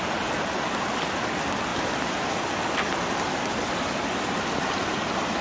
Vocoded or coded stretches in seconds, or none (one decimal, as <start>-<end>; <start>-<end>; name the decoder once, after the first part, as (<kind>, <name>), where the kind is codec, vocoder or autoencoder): none